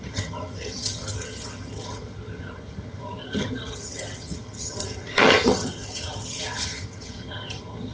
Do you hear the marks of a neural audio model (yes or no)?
yes